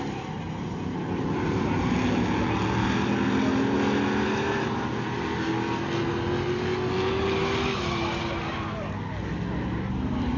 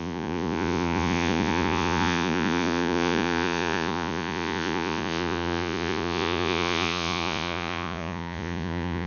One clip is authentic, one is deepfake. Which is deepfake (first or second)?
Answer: second